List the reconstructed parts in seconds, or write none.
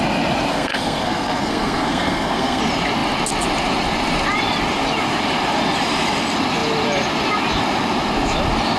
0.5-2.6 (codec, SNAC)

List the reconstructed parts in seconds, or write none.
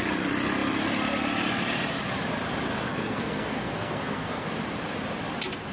2.9-4.5 (codec, SNAC)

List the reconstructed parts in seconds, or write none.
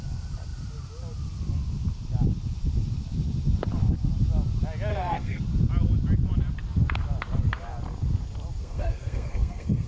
4.9-5.4 (codec, SNAC); 8.6-9.9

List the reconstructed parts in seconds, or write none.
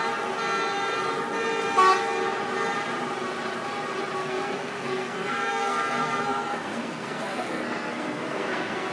4.2-8.9 (codec, SNAC)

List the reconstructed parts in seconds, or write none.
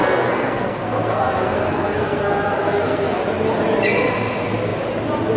0.0-3.2 (codec, SNAC)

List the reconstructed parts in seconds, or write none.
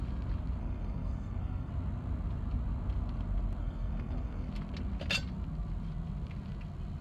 0.6-1.7 (codec, SNAC); 3.6-4.5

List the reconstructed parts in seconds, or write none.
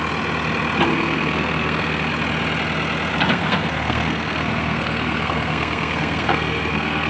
0.9-2.1 (codec, SNAC); 3.1-7.1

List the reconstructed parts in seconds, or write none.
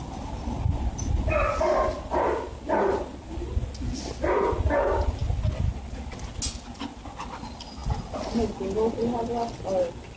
none